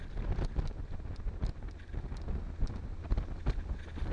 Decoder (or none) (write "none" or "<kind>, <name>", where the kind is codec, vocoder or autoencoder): none